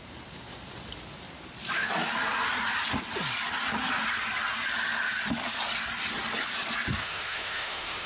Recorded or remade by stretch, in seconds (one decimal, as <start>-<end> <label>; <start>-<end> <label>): 0.0-7.0 recorded; 7.0-8.1 remade